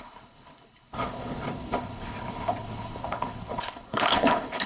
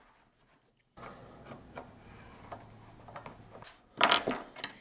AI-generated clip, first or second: first